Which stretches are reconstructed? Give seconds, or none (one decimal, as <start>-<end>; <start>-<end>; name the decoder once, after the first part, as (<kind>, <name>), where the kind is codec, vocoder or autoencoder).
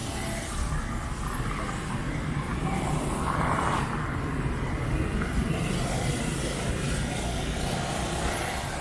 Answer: none